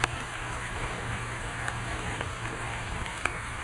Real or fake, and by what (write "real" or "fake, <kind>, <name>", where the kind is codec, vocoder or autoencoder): fake, codec, DAC